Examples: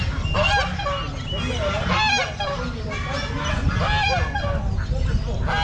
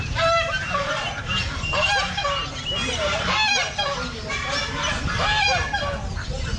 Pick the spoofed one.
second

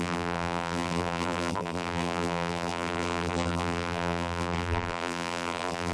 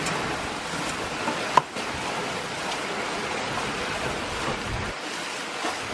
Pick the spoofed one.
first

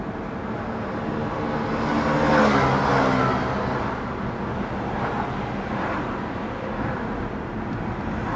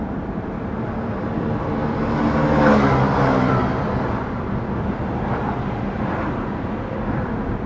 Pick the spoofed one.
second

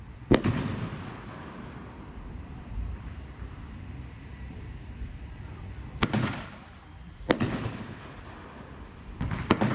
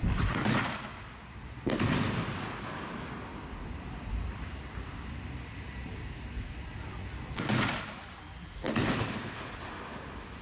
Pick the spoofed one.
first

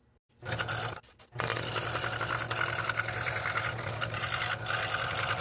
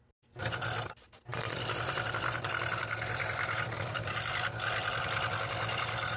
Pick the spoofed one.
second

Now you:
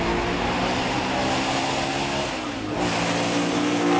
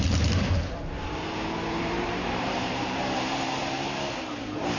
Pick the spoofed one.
second